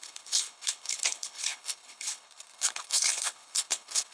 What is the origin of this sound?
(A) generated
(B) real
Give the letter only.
A